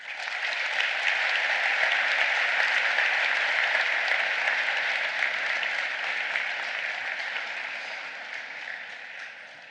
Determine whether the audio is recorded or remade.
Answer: recorded